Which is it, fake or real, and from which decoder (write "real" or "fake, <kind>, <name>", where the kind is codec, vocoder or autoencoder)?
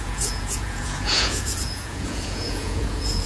fake, vocoder, Vocos